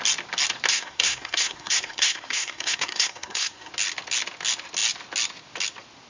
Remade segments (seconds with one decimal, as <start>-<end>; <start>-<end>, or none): 0.7-3.7